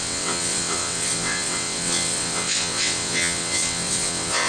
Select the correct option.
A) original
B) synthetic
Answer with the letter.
B